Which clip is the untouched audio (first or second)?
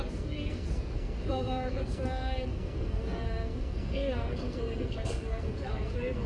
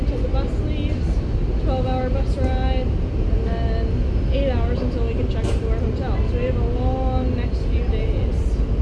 second